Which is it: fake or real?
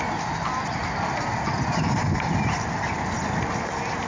real